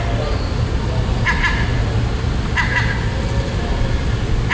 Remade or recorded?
recorded